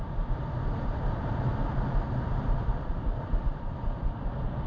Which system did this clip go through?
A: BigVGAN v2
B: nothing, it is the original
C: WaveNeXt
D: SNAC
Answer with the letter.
B